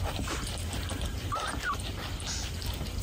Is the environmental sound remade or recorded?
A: recorded